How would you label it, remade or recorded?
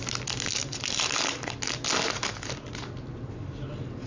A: recorded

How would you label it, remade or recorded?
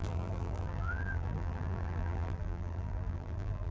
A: remade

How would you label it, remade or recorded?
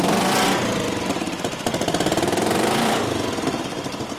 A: remade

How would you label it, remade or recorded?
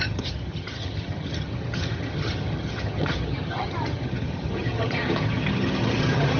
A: remade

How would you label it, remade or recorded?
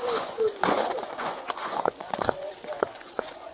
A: remade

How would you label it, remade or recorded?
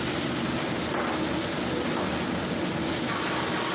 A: recorded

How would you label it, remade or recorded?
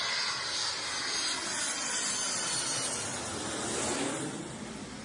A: recorded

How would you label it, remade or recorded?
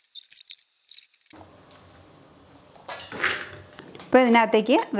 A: recorded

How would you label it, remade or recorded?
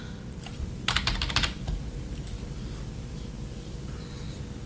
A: recorded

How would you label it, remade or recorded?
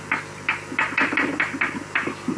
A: recorded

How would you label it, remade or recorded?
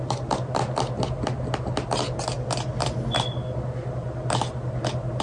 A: recorded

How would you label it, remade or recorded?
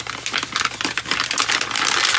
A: remade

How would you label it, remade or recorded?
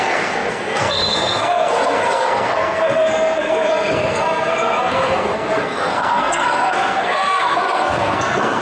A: remade